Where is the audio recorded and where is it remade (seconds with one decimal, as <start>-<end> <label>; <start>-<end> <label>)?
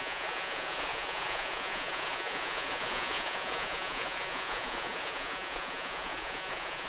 0.0-6.9 remade